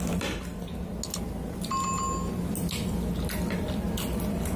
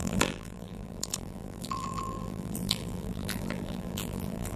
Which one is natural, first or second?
first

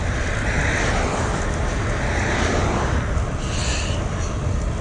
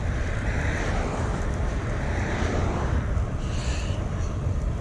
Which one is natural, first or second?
first